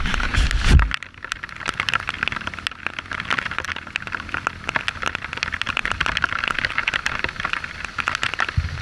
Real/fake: real